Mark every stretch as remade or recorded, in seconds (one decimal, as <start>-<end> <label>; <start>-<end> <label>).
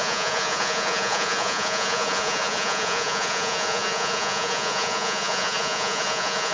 0.0-6.5 remade